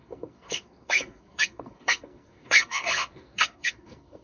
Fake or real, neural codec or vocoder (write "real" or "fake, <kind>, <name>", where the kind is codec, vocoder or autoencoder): fake, codec, SNAC